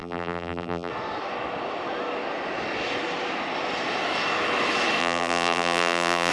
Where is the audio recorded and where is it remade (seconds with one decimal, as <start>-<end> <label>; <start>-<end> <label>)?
0.0-0.9 remade; 0.9-5.0 recorded; 5.0-6.3 remade